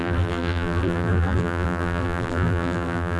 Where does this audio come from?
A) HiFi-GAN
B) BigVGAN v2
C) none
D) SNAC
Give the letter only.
B